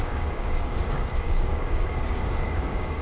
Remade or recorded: remade